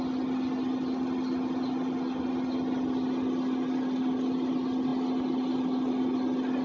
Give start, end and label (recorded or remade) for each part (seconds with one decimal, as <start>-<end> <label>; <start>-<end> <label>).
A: 0.0-6.6 recorded